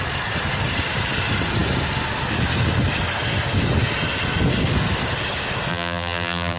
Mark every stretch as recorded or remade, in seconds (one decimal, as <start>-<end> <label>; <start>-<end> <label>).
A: 0.0-5.7 recorded; 5.7-6.6 remade